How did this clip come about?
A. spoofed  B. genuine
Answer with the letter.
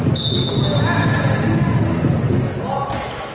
B